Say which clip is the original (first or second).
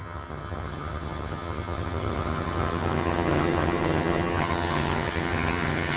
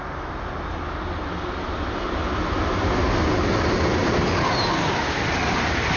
second